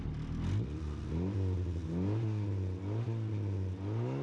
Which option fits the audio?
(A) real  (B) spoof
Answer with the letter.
A